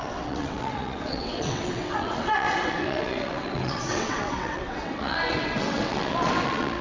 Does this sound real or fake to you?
fake